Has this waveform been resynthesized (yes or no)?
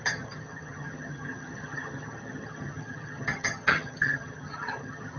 yes